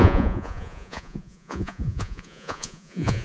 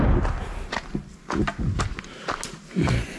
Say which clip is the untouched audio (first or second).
second